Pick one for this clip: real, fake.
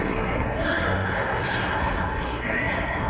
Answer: fake